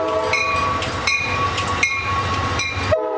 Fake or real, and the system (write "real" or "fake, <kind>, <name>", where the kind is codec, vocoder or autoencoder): real